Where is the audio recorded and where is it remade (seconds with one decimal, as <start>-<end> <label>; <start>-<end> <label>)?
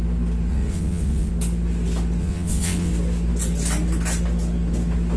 0.0-0.5 recorded; 0.5-1.3 remade; 1.3-2.2 recorded; 2.2-2.9 remade; 2.9-5.2 recorded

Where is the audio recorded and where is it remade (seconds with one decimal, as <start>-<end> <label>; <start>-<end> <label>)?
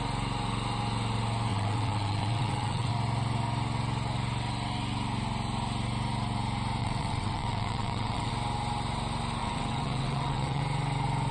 0.0-1.5 recorded; 1.5-2.9 remade; 2.9-6.8 recorded; 6.8-8.3 remade; 8.3-9.4 recorded; 9.4-10.6 remade; 10.6-11.3 recorded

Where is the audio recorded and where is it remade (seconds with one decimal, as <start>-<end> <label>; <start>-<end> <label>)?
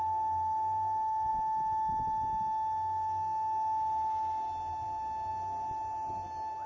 0.0-6.7 recorded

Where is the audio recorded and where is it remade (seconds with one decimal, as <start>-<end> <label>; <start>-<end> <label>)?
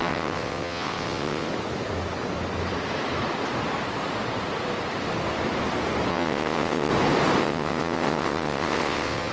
0.0-1.5 remade; 1.5-6.1 recorded; 6.1-6.9 remade; 6.9-7.4 recorded; 7.4-9.3 remade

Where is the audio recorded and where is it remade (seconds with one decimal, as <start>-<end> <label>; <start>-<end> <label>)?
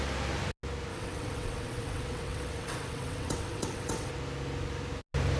0.0-0.9 recorded; 0.9-4.1 remade; 4.1-5.4 recorded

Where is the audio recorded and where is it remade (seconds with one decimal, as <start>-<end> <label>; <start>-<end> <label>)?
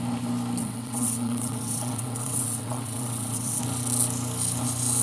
0.0-0.6 recorded; 0.6-3.6 remade; 3.6-5.0 recorded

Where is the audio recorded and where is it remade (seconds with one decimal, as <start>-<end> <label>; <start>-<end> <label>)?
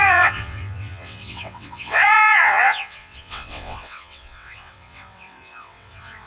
0.0-6.3 remade